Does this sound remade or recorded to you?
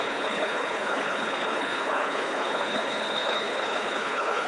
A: remade